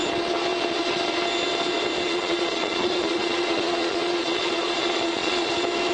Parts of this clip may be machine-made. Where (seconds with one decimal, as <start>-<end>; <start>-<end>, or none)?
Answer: 2.1-5.5